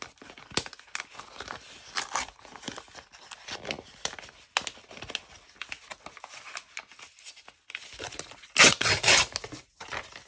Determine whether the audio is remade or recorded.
recorded